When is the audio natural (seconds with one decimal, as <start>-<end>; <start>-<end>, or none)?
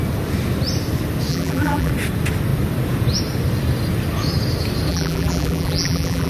0.0-1.3; 1.9-4.9